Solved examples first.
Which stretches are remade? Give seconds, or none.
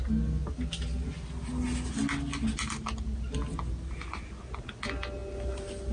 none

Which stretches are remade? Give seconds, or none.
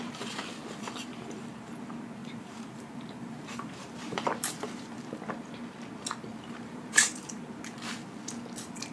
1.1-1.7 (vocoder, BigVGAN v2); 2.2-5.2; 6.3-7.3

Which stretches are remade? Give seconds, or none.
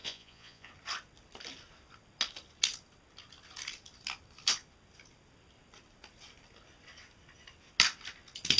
0.0-0.7 (vocoder, Vocos)